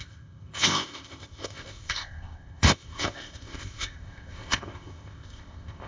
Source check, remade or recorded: remade